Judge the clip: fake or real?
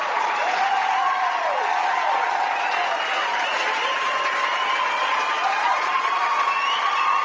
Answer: fake